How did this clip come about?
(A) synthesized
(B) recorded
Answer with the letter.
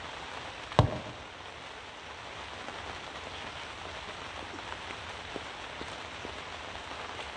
B